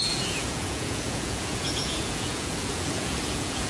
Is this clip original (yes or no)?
no